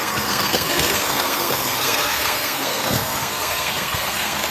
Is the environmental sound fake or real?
fake